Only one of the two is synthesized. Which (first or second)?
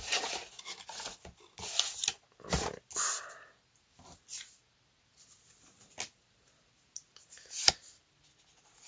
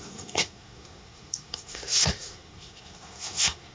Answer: second